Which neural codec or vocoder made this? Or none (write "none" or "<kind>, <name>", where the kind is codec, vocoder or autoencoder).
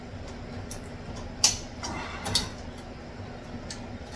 none